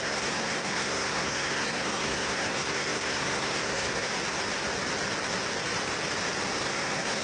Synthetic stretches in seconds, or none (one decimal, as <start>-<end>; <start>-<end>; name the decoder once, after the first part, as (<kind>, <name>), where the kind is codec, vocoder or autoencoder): 0.0-4.1 (codec, SNAC); 6.6-7.2